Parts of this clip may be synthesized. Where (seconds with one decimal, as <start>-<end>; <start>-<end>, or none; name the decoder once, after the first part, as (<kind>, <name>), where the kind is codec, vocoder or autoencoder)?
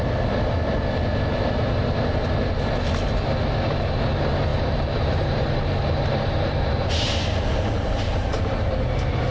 4.5-8.7 (vocoder, BigVGAN v2)